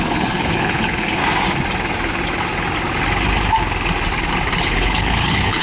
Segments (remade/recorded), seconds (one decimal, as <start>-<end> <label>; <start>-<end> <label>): 0.0-1.2 remade; 1.2-4.6 recorded; 4.6-5.6 remade